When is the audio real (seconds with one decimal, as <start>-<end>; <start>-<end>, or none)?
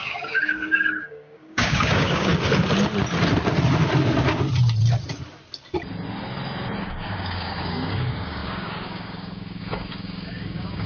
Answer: 2.3-6.8